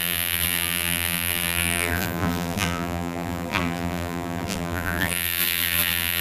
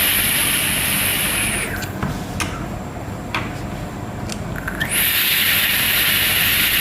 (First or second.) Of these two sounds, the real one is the second